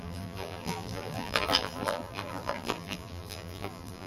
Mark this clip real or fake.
fake